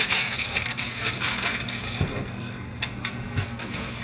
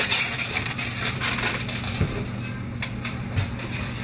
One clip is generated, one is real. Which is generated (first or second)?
first